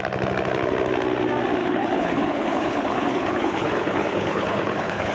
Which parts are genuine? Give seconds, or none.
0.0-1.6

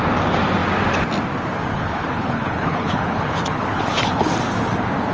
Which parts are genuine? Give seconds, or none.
0.0-1.7; 4.3-5.1

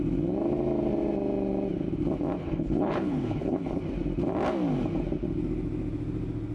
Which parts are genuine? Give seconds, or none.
0.0-2.4; 3.8-6.5